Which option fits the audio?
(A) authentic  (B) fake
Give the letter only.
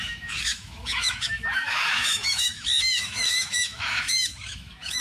B